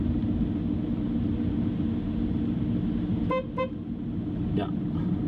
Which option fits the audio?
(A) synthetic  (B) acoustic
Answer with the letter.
B